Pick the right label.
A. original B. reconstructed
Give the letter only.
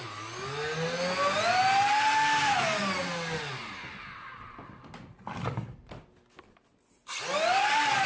A